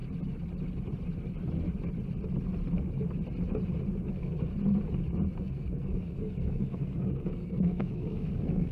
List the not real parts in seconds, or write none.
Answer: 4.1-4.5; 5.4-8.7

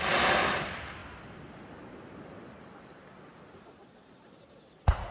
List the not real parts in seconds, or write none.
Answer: none

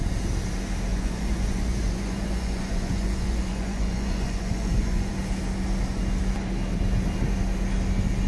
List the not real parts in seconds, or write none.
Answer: 0.9-5.1

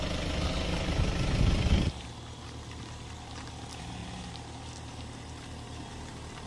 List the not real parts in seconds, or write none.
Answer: 0.0-6.5

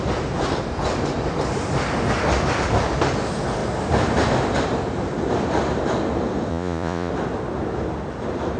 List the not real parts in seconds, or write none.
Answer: 6.5-7.1

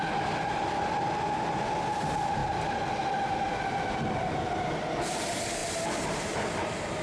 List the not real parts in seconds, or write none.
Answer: none